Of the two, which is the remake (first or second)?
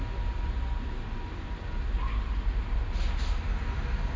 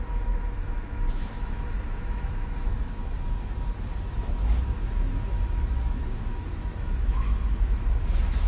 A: second